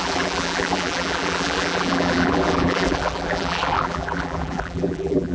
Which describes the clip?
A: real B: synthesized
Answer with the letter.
B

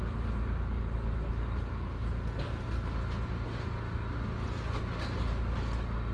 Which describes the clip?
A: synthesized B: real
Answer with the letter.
B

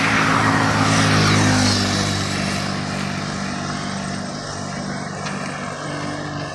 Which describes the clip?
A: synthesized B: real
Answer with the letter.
B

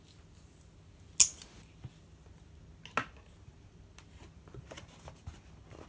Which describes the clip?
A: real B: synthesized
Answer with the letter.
A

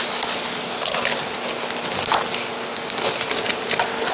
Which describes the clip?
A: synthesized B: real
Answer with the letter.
B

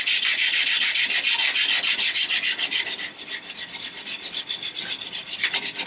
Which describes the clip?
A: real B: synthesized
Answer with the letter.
A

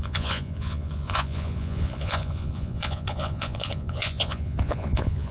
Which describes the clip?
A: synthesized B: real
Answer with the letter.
A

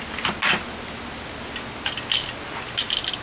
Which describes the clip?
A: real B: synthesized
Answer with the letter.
A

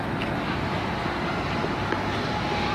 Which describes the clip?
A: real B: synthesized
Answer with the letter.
A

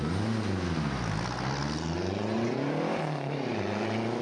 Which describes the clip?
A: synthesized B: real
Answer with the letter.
B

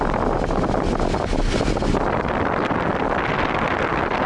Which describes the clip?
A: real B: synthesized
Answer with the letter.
A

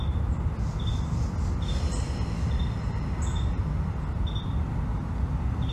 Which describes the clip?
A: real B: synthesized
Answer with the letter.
A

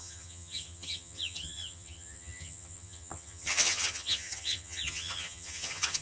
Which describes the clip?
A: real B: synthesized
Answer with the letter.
B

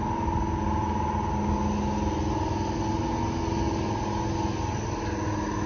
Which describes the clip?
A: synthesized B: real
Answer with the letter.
B